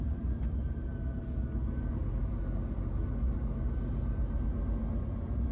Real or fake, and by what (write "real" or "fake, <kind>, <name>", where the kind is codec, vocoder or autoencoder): real